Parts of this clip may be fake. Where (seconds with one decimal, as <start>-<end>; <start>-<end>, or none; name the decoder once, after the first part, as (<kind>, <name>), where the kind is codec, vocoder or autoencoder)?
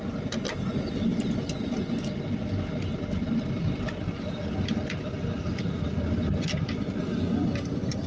none